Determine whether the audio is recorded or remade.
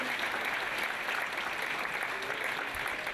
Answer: recorded